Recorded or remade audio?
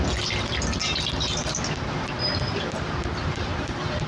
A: recorded